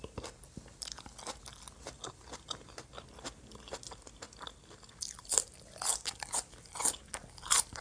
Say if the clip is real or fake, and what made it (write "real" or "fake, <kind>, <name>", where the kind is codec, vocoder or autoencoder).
real